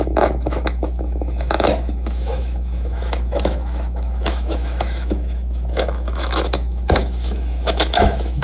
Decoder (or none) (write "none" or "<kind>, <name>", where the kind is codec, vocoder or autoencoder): autoencoder, DAC-VAE